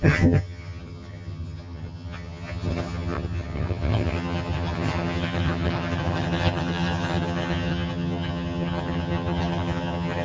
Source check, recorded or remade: remade